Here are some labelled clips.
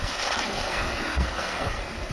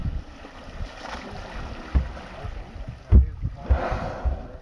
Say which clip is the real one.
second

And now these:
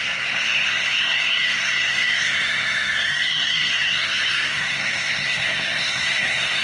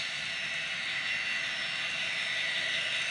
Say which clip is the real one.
second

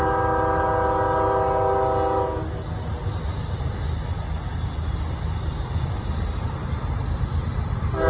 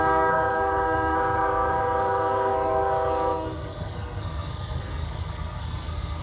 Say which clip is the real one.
first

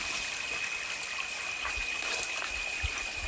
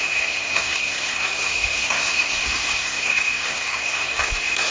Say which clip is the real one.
first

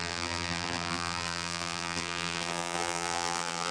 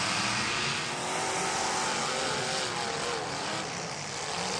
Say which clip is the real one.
second